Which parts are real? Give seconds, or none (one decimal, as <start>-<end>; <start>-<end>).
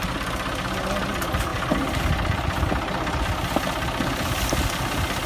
0.0-5.3